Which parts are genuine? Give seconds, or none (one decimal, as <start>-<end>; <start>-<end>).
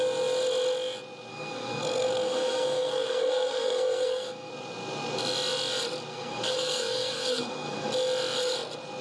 0.0-1.3; 4.5-6.1; 7.9-9.0